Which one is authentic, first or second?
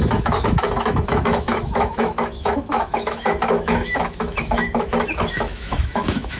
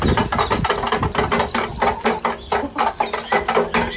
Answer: second